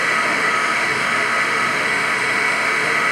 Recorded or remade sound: remade